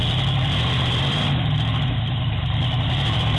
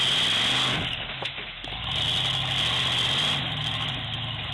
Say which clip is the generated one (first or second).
first